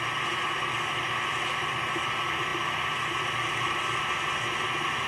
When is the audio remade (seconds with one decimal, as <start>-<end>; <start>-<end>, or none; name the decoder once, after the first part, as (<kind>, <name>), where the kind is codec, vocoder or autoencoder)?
none